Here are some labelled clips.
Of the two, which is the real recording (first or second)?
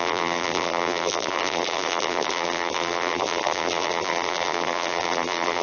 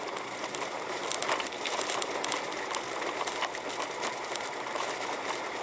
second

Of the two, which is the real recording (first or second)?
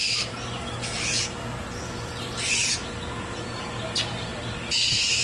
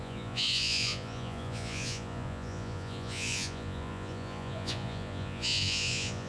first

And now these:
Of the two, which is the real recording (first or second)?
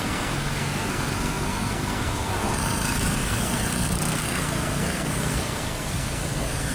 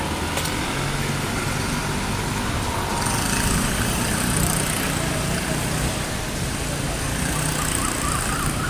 second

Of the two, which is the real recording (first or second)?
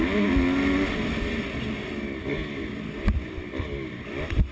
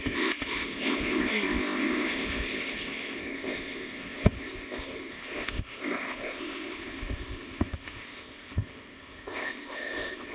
first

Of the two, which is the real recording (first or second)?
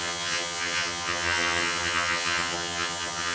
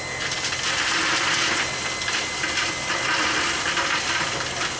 second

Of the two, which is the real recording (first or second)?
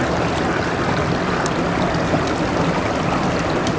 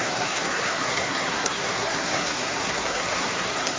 first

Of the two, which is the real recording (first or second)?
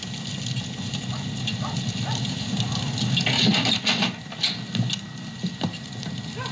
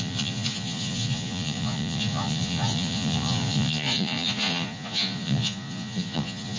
first